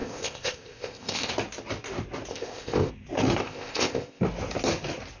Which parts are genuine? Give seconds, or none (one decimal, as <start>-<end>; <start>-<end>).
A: 1.3-2.3; 2.9-3.4; 4.2-5.2